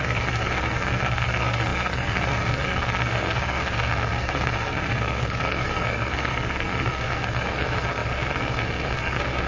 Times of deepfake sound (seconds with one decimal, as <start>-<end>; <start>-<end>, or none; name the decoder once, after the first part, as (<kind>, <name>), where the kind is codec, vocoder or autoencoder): 0.0-9.5 (codec, SNAC)